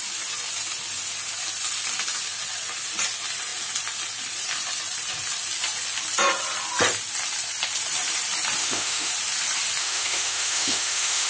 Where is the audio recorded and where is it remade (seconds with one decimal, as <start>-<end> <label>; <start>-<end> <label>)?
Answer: 0.0-8.6 recorded; 8.6-9.1 remade; 9.1-9.8 recorded; 9.8-11.3 remade

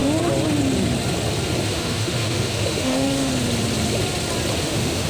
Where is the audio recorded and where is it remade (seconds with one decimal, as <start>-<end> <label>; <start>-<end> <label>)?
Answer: 0.0-1.7 recorded; 1.7-3.3 remade; 3.3-4.6 recorded; 4.6-5.1 remade

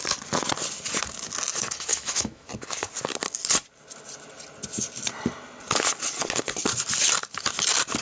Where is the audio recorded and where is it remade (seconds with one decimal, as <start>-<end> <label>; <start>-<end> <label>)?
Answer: 0.0-1.9 recorded; 1.9-2.5 remade; 2.5-8.0 recorded

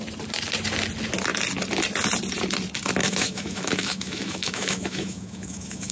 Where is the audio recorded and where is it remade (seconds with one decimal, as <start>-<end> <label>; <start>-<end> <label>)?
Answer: 0.0-3.0 recorded; 3.0-5.9 remade

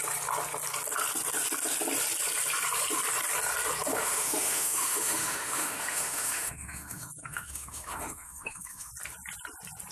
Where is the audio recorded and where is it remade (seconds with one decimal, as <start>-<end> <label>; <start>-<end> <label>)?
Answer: 0.0-3.9 recorded; 3.9-8.9 remade; 8.9-9.9 recorded

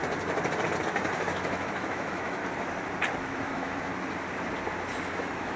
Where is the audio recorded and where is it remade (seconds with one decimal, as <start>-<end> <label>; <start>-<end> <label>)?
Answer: 0.0-1.2 recorded; 1.2-2.4 remade; 2.4-3.2 recorded; 3.2-3.9 remade; 3.9-5.0 recorded; 5.0-5.6 remade

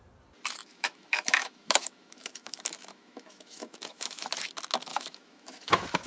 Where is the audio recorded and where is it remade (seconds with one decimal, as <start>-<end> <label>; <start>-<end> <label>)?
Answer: 0.0-0.6 recorded; 0.6-4.3 remade; 4.3-4.9 recorded; 4.9-6.1 remade

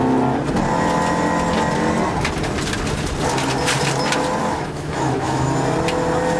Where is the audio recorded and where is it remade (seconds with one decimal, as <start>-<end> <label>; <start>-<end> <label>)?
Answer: 0.0-4.4 recorded; 4.4-5.5 remade; 5.5-6.4 recorded